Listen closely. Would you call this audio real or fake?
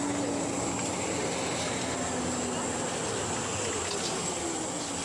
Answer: real